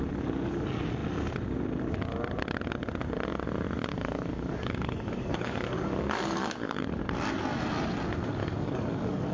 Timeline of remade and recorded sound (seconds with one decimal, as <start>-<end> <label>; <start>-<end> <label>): 0.0-3.9 recorded; 3.9-7.0 remade; 7.0-8.4 recorded; 8.4-9.3 remade